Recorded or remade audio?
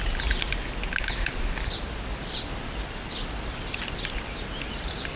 recorded